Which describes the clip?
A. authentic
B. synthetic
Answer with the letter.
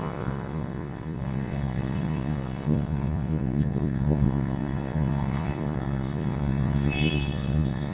B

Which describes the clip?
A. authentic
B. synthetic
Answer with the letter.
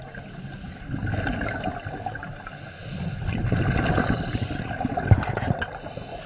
A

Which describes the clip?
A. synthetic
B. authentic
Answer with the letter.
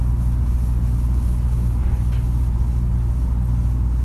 B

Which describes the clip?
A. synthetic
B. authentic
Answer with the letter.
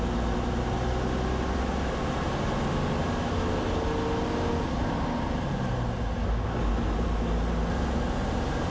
B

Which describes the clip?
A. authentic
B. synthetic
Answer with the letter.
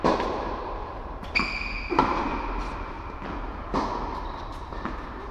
A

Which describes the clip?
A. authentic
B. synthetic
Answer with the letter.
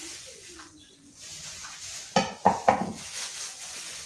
B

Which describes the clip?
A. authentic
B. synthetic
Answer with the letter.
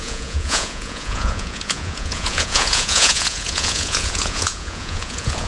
B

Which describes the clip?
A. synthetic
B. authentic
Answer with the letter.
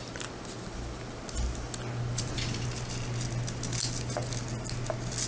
B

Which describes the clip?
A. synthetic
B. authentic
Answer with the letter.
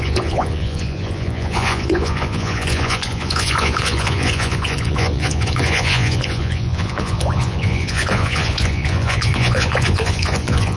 A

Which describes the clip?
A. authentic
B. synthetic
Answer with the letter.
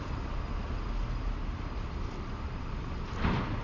A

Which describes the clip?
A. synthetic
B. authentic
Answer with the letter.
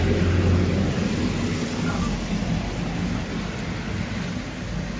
B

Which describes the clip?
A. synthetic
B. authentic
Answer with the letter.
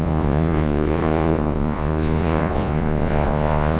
A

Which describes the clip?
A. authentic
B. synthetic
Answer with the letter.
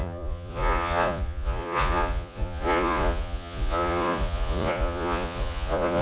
B